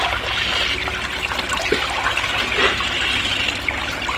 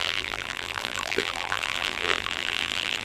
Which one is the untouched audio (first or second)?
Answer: first